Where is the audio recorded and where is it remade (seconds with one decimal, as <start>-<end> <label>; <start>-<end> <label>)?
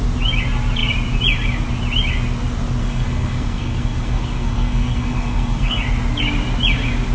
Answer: 0.0-2.8 recorded; 2.8-5.8 remade; 5.8-7.1 recorded